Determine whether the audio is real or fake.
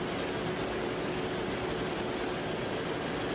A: real